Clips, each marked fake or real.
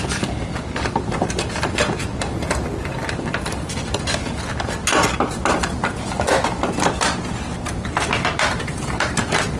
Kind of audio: real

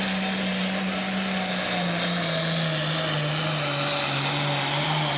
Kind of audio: real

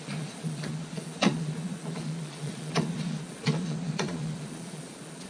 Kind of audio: fake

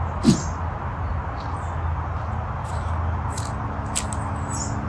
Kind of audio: real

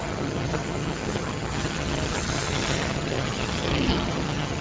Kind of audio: fake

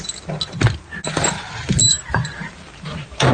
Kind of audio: real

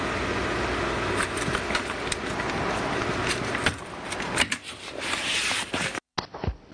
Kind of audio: real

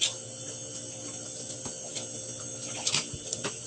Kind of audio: real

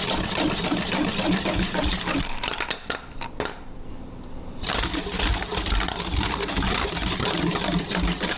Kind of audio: real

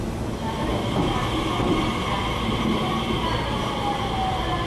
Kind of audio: real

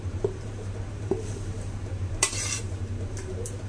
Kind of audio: fake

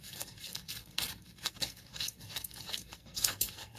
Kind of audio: fake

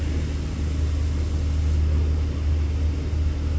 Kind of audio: real